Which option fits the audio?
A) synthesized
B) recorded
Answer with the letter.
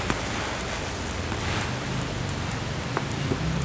B